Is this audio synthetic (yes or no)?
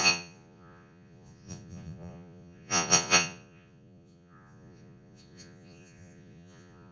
yes